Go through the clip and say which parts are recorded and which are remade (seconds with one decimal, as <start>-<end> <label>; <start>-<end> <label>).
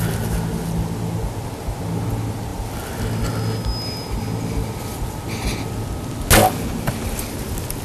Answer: 0.0-7.8 recorded